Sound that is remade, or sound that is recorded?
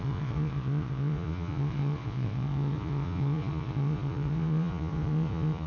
remade